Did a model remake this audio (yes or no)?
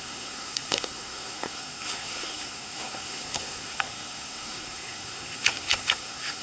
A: yes